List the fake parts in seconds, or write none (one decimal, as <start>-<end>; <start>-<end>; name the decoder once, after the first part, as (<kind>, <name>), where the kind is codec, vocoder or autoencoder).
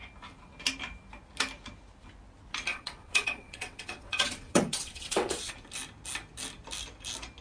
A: 2.7-5.5 (vocoder, WaveNeXt)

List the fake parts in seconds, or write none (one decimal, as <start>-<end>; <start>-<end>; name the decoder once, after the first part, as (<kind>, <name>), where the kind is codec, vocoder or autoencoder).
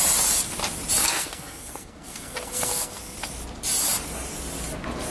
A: 1.0-3.3 (codec, SNAC)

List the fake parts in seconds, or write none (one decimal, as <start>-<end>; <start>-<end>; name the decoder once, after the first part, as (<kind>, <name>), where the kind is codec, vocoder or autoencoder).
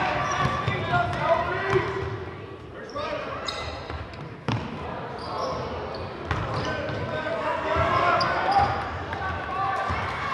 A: 2.7-5.0 (vocoder, BigVGAN v2)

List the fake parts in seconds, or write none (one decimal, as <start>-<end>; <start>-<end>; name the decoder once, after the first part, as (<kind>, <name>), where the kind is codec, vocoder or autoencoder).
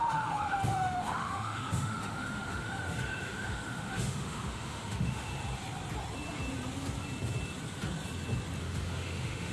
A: 0.0-5.3 (autoencoder, DAC-VAE); 8.6-9.5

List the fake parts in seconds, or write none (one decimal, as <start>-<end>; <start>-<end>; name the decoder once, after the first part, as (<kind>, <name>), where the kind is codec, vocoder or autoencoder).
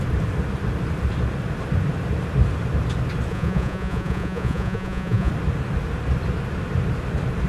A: 3.3-5.3 (vocoder, Vocos)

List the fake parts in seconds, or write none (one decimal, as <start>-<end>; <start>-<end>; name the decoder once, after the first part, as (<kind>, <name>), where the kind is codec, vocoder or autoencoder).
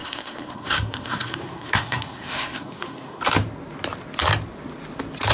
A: 0.0-3.2 (codec, SNAC)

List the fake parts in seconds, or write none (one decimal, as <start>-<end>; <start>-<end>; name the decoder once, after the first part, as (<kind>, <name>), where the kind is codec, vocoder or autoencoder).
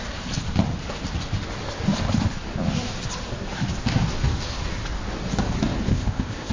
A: 5.9-6.5 (codec, ZipCodec)